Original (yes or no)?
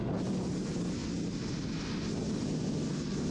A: yes